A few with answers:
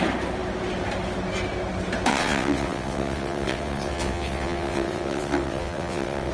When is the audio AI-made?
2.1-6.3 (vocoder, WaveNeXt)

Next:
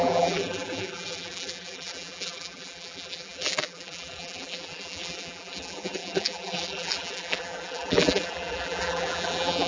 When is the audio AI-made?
0.0-9.7 (vocoder, BigVGAN v2)

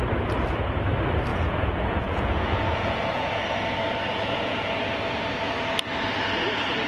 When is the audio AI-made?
1.3-3.4 (vocoder, Vocos); 4.1-4.7

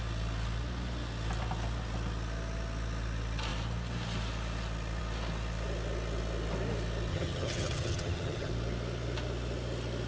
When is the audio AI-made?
7.1-8.5 (vocoder, HiFi-GAN)

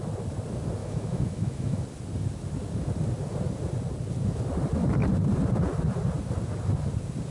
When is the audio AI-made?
0.8-1.8 (autoencoder, DAC-VAE)

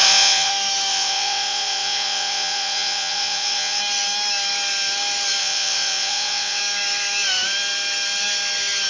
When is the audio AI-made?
0.0-0.5 (vocoder, WaveNeXt); 0.9-3.8; 5.4-6.6

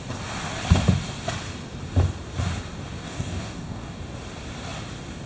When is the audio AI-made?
3.0-4.0 (codec, DAC)

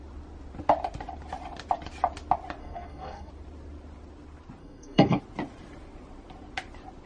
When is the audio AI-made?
2.6-3.3 (codec, SNAC); 4.6-5.2